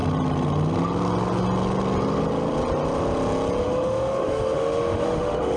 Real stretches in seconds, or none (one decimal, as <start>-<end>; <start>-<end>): 0.0-3.6